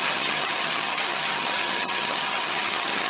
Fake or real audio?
fake